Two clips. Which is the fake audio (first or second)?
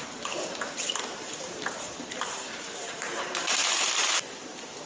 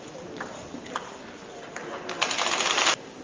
first